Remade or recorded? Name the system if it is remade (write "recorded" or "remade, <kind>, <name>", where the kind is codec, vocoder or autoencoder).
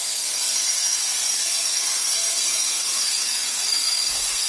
remade, codec, SNAC